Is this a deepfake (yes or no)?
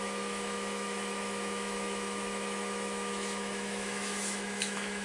yes